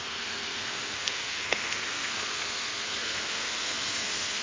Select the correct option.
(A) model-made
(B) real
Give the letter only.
A